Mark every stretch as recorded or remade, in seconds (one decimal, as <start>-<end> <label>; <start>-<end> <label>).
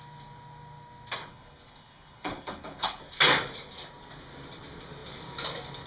0.0-1.3 recorded; 1.3-3.0 remade; 3.0-5.9 recorded